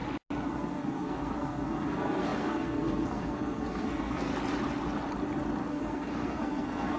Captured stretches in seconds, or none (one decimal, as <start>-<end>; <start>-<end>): 0.0-0.5; 4.3-5.7